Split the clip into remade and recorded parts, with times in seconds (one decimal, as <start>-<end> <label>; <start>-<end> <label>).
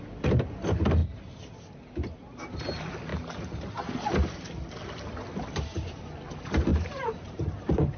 0.0-3.1 recorded; 3.1-3.9 remade; 3.9-6.7 recorded; 6.7-8.0 remade